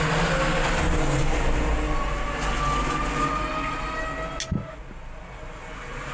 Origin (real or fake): real